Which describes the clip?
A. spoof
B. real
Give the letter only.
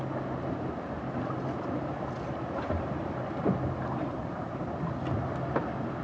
B